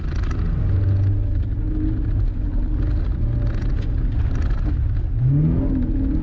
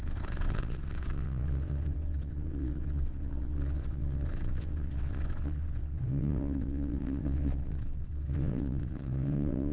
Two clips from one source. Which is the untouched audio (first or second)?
first